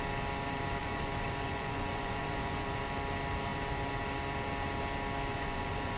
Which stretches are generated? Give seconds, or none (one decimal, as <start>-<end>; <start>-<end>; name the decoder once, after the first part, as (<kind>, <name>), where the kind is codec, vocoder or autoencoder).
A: 0.8-2.8 (vocoder, Vocos); 5.3-6.0